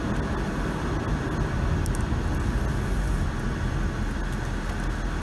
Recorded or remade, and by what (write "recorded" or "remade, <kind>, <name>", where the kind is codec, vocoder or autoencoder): recorded